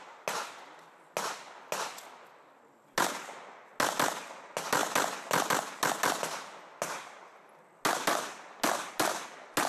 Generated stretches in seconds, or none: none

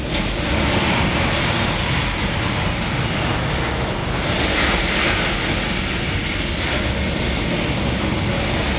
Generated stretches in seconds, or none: 4.0-4.8 (vocoder, BigVGAN v2)

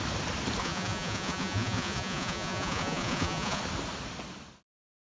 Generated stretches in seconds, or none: 0.6-3.6 (vocoder, Vocos)

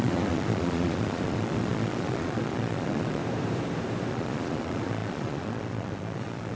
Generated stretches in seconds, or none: 0.0-3.2 (vocoder, Vocos); 4.1-6.6

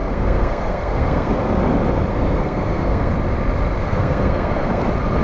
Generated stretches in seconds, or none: 0.0-1.6 (codec, SNAC); 2.1-3.1; 3.8-4.8

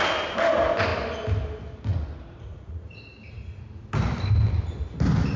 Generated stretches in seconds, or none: 1.9-3.6 (vocoder, Vocos)